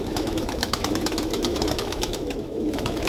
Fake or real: fake